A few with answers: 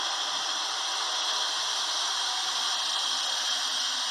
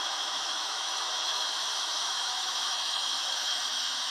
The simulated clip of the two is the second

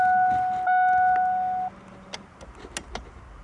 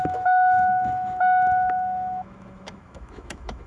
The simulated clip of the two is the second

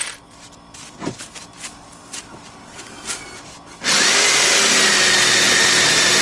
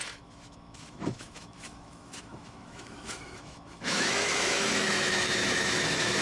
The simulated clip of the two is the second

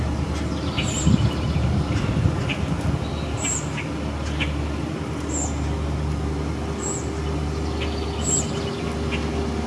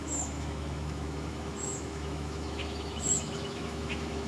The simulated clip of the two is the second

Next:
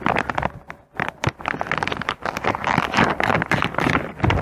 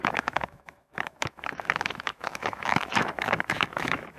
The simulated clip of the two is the second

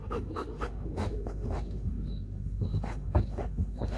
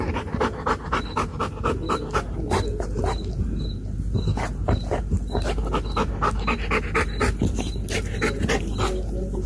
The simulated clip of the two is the first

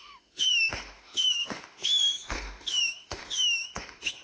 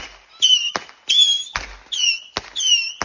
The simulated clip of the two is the first